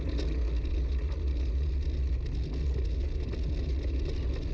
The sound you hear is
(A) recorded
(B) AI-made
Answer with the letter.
A